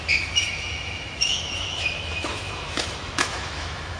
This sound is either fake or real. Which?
fake